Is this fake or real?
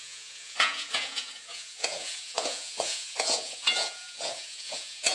fake